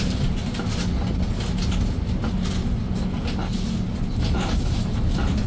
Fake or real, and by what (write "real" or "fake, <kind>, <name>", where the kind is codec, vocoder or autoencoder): real